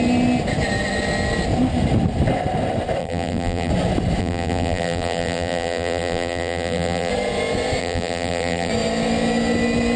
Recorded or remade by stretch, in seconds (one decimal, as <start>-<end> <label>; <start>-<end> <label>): 0.0-3.0 recorded; 3.0-3.7 remade; 3.7-4.2 recorded; 4.2-7.1 remade; 7.1-7.8 recorded; 7.8-8.7 remade; 8.7-10.0 recorded